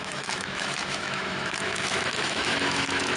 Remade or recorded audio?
remade